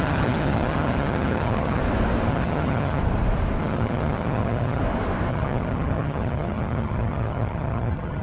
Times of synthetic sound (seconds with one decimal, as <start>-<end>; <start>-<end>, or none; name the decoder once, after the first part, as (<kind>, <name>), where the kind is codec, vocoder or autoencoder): 0.0-1.8 (vocoder, HiFi-GAN); 2.3-3.0; 3.6-4.8; 5.3-8.2